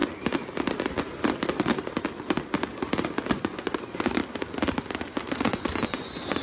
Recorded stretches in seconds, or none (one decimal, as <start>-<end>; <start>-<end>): 0.0-3.3; 4.2-5.3